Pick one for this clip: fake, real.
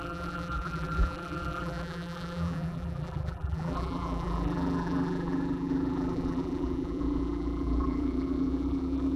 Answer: fake